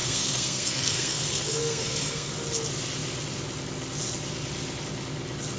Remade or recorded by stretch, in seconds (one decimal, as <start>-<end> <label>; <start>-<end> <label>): 0.0-2.3 remade; 2.3-5.6 recorded